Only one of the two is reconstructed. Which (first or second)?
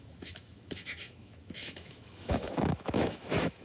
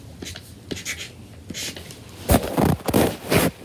first